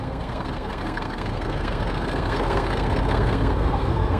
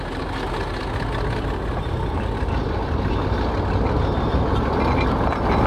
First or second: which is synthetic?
first